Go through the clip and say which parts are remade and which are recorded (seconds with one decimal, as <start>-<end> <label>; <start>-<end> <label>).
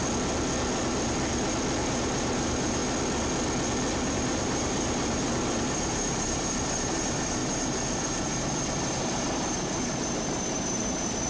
0.0-1.9 recorded; 1.9-2.8 remade; 2.8-4.1 recorded; 4.1-11.3 remade